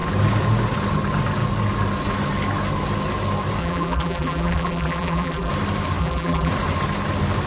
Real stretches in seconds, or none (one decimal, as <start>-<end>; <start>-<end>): 0.0-3.6; 5.5-6.0; 6.5-7.5